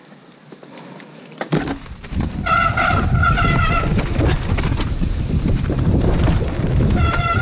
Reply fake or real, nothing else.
real